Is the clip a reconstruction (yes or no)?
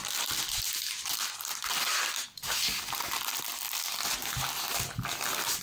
no